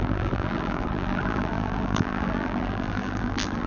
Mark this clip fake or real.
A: fake